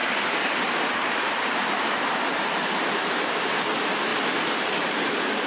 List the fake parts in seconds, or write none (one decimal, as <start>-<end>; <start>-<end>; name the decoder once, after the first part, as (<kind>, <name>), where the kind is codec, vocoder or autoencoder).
0.0-3.3 (vocoder, BigVGAN v2); 4.1-5.1